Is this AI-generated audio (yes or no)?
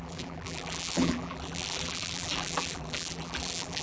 yes